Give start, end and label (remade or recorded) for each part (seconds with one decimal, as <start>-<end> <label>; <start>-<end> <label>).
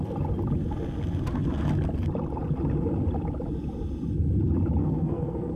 0.0-4.8 recorded; 4.8-5.5 remade